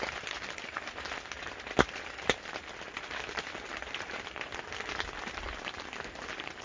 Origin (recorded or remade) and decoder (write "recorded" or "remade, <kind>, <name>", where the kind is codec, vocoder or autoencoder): recorded